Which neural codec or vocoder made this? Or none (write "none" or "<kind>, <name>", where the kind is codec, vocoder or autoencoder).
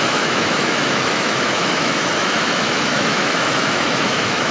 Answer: autoencoder, DAC-VAE